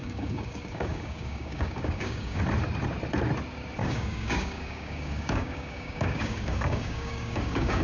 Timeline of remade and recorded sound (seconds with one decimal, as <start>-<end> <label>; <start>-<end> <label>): 0.0-2.4 remade; 2.4-3.8 recorded; 3.8-7.8 remade